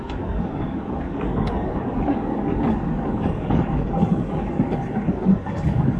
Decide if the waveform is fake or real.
fake